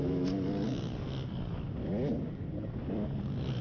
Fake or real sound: real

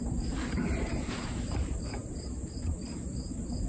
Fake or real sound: fake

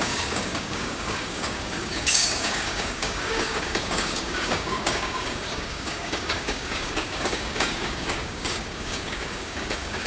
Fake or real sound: fake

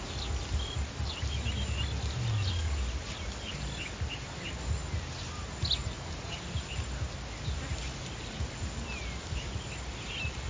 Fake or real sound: real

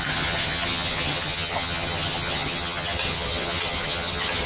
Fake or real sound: fake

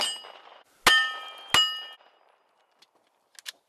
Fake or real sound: real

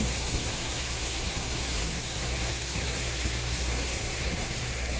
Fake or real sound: fake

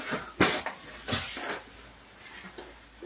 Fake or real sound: real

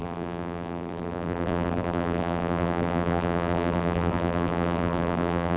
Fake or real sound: fake